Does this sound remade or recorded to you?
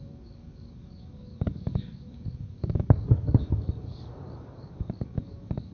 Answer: remade